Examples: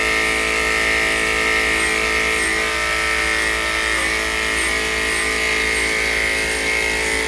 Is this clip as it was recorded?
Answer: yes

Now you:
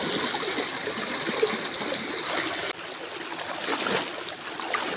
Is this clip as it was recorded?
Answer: yes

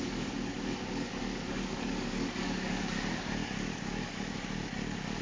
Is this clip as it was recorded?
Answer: no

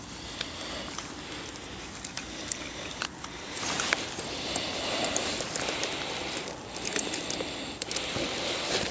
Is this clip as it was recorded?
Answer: yes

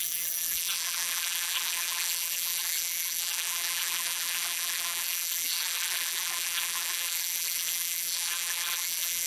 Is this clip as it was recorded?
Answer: no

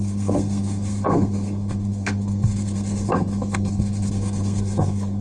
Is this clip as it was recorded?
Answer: no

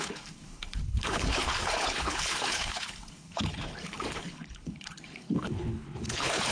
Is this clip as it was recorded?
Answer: no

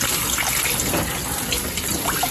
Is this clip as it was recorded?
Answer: yes